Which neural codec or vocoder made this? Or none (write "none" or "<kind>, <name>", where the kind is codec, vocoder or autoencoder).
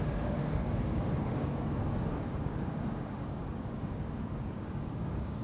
codec, DAC